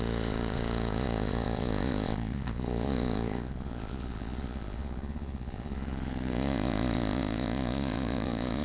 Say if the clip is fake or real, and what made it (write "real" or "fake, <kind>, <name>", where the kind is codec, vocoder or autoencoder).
fake, vocoder, Vocos